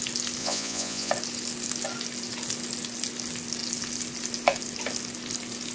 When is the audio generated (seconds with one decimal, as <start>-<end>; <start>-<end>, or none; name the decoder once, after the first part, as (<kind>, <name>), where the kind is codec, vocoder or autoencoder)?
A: 0.4-1.1 (vocoder, Vocos)